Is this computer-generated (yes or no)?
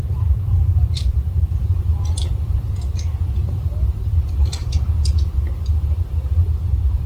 yes